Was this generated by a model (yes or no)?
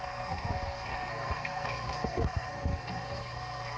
yes